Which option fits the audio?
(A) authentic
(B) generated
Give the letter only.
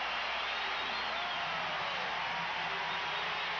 A